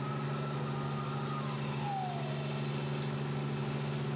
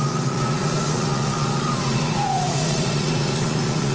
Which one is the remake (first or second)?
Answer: second